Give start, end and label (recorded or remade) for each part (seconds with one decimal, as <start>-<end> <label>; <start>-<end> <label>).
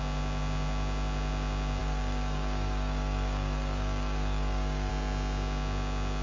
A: 0.0-1.8 recorded; 1.8-4.9 remade; 4.9-6.2 recorded